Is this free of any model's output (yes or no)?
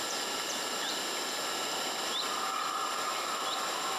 no